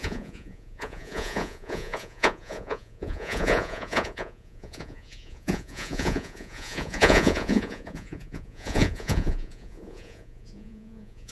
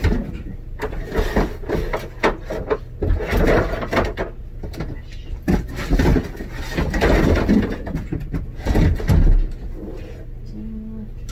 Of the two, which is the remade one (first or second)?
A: first